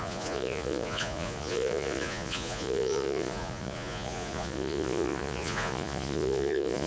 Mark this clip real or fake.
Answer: fake